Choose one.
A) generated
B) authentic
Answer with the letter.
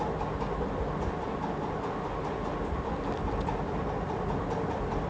B